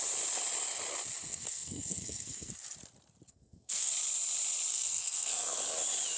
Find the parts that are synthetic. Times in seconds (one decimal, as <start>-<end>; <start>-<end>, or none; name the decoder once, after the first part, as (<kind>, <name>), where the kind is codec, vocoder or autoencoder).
1.3-2.5 (codec, SNAC); 3.3-3.9; 4.7-5.6